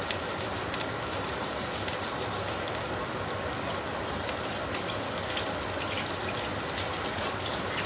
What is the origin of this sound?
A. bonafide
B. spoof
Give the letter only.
A